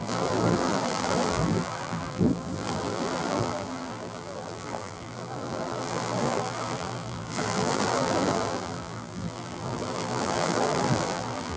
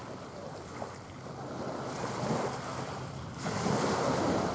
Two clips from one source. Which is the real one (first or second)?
second